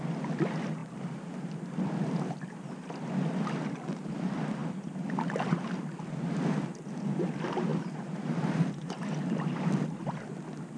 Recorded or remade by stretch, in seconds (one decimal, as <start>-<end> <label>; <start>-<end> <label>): 0.0-0.8 recorded; 0.8-3.1 remade; 3.1-4.6 recorded; 4.6-6.0 remade; 6.0-7.7 recorded; 7.7-9.1 remade; 9.1-10.8 recorded